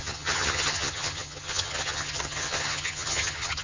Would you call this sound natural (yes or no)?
no